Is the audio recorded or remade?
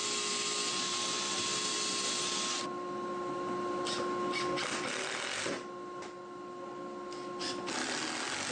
recorded